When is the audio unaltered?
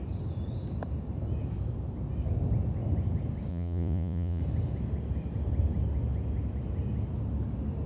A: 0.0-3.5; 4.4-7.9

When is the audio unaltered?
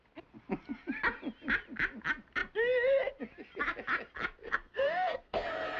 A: 0.0-4.4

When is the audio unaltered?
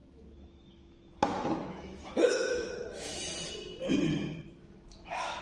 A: 3.2-4.6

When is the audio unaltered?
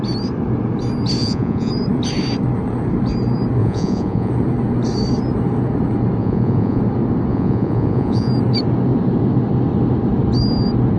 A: 0.0-1.2; 1.7-3.6; 4.3-6.2; 6.8-7.3; 8.3-11.0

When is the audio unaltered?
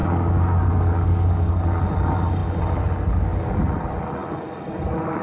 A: 1.6-5.2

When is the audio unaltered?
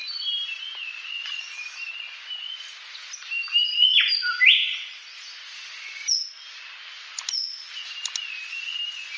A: 0.0-9.2